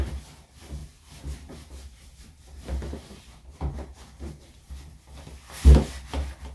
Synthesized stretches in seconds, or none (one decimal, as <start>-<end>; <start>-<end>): 0.8-4.7